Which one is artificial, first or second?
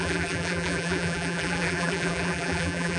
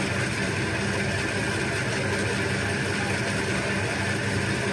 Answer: first